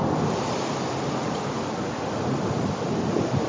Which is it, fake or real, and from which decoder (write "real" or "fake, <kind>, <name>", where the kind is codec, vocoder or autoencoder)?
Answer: real